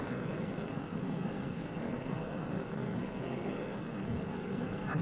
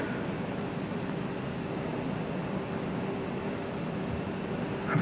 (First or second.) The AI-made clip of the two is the first